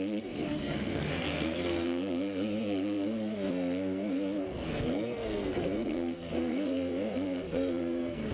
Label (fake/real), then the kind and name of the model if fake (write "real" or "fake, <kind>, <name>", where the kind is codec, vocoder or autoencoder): fake, codec, SNAC